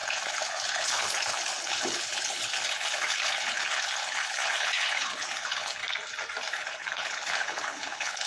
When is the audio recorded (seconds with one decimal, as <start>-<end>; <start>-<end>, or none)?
5.8-6.5